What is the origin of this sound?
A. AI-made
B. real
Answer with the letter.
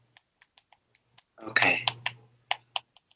B